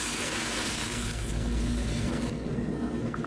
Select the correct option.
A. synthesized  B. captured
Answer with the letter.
A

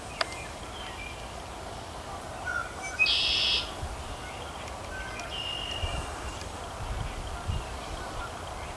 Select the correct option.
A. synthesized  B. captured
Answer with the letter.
B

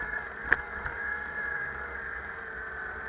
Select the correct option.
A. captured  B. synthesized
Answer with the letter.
A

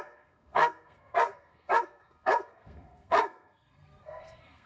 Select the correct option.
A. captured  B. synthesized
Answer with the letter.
B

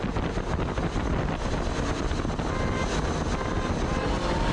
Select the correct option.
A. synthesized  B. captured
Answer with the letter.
B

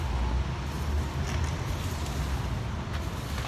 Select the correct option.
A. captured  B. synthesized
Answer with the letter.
A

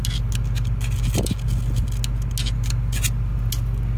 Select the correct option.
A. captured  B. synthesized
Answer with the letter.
A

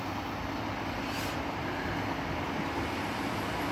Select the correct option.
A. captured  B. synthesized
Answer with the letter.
A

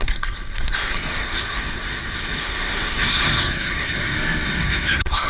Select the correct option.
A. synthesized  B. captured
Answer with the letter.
A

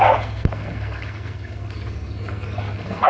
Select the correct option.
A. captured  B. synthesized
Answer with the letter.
B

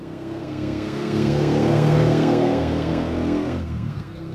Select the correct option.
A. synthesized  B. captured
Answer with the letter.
A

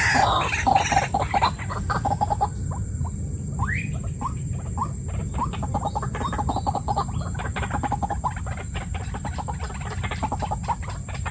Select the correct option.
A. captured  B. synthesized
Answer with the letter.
A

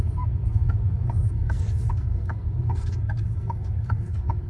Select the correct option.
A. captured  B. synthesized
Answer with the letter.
B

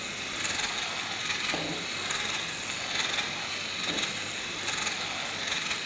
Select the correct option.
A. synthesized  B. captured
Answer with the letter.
B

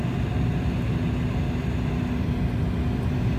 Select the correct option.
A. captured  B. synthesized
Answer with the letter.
A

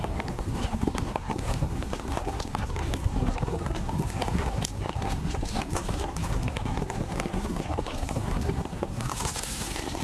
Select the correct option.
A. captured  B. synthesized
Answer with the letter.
B